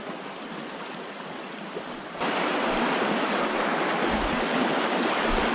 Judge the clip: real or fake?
real